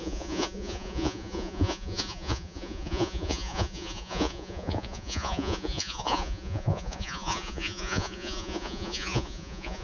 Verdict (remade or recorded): remade